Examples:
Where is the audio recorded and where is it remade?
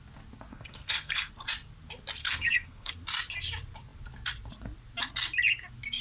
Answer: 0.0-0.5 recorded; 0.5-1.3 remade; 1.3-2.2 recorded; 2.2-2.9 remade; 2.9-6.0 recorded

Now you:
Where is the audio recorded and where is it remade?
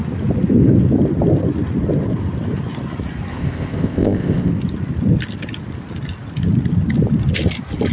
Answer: 0.0-3.3 recorded; 3.3-4.5 remade; 4.5-7.9 recorded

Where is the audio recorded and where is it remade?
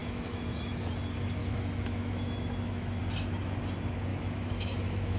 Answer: 0.0-0.9 remade; 0.9-1.4 recorded; 1.4-3.0 remade; 3.0-4.1 recorded; 4.1-5.2 remade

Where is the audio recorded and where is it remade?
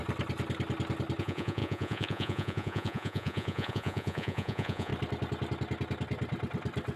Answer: 0.0-1.2 recorded; 1.2-4.9 remade; 4.9-7.0 recorded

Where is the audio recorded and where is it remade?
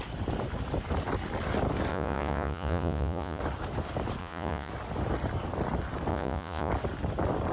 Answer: 0.0-1.9 recorded; 1.9-3.4 remade; 3.4-4.2 recorded; 4.2-4.7 remade; 4.7-6.1 recorded; 6.1-6.7 remade; 6.7-7.5 recorded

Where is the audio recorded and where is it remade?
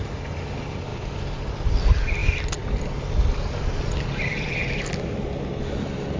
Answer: 0.0-6.2 recorded